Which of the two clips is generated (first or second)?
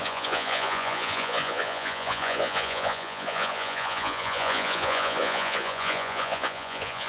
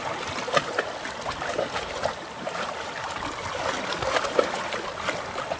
first